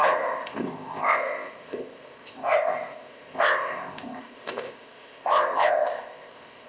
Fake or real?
fake